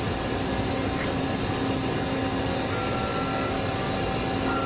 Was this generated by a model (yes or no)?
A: no